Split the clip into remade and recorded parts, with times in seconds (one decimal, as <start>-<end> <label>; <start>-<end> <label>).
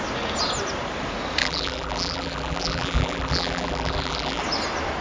0.0-1.4 recorded; 1.4-4.4 remade; 4.4-5.0 recorded